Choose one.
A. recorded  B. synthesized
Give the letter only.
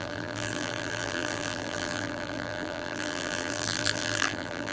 B